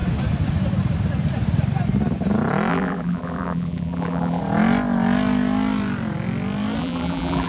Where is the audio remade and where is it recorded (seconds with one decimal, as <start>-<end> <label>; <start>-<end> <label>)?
0.0-2.7 recorded; 2.7-4.4 remade; 4.4-6.8 recorded; 6.8-7.5 remade